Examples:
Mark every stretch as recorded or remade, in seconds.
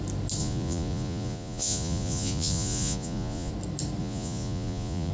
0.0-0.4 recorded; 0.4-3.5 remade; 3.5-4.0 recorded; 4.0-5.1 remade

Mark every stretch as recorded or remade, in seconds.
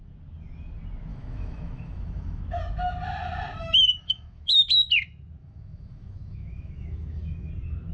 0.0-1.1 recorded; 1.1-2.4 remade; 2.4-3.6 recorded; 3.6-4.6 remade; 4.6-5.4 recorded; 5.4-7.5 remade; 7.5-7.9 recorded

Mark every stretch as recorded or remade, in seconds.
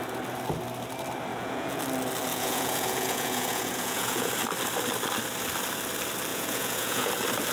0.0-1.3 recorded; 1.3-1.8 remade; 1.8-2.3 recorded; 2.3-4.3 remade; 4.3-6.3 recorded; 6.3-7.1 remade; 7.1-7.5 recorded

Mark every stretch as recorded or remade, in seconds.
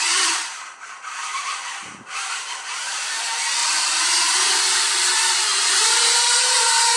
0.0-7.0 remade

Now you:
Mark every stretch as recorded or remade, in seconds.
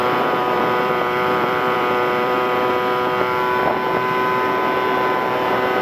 0.0-2.7 remade; 2.7-5.8 recorded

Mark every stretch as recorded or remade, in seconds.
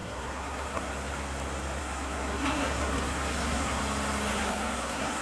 0.0-0.9 remade; 0.9-1.8 recorded; 1.8-3.8 remade; 3.8-4.3 recorded; 4.3-5.2 remade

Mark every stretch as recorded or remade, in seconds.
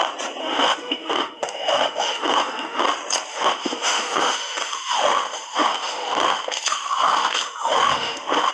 0.0-0.4 recorded; 0.4-2.8 remade; 2.8-3.3 recorded; 3.3-8.5 remade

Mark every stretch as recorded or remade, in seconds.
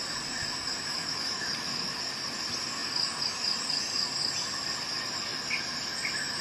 0.0-0.9 recorded; 0.9-1.5 remade; 1.5-6.4 recorded